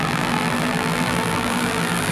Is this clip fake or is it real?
fake